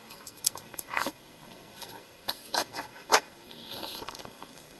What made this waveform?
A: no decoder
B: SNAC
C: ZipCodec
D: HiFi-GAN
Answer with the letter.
B